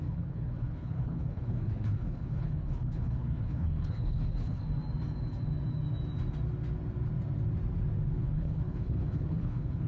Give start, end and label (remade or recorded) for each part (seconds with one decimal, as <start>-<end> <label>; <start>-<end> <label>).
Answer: 0.0-4.6 remade; 4.6-8.2 recorded; 8.2-9.9 remade